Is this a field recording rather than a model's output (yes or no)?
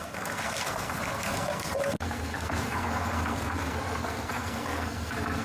no